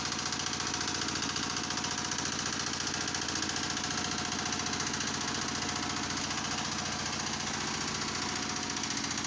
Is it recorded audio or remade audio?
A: recorded